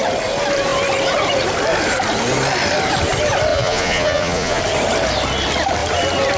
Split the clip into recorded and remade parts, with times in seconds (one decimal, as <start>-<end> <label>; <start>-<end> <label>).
0.0-3.5 recorded; 3.5-4.6 remade; 4.6-6.4 recorded